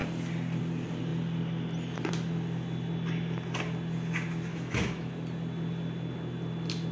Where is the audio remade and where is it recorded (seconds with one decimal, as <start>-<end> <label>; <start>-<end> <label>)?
0.0-4.5 recorded; 4.5-5.1 remade; 5.1-6.9 recorded